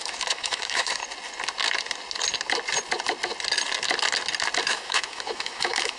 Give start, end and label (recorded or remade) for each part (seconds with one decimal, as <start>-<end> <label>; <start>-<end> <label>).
0.0-1.0 remade; 1.0-4.6 recorded; 4.6-6.0 remade